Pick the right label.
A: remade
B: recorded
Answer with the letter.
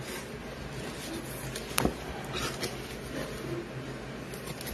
B